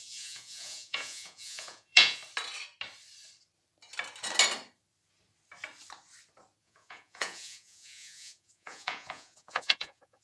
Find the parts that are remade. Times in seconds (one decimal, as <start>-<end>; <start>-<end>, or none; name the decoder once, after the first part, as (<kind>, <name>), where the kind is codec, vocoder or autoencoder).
0.0-2.2 (vocoder, Vocos); 6.6-10.2